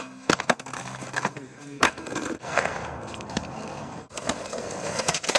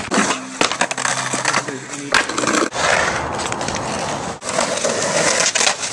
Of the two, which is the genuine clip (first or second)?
second